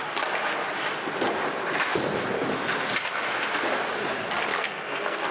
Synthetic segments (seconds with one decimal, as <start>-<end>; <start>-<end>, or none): 4.5-5.3